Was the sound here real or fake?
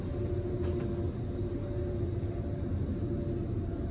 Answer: real